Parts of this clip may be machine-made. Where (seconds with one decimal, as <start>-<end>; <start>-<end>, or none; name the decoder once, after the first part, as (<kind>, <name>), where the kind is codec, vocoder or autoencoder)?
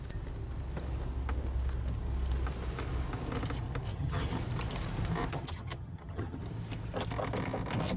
3.9-4.4 (vocoder, HiFi-GAN); 5.3-6.4